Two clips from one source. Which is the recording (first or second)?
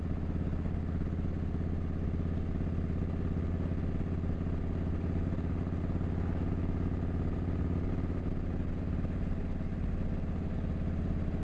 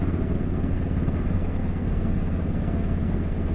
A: first